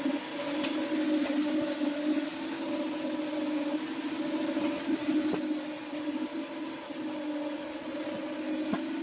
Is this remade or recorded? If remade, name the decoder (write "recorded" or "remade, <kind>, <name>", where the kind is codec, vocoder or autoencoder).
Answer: recorded